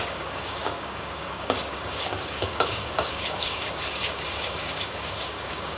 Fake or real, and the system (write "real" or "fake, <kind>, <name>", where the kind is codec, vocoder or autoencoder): fake, codec, DAC